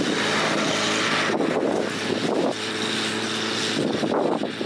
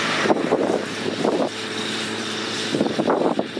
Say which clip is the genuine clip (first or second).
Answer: first